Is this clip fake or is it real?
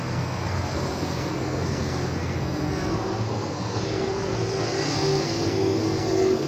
fake